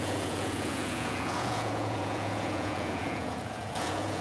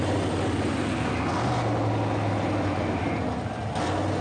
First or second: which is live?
second